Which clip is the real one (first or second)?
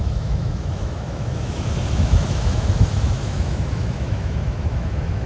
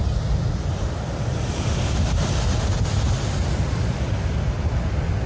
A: second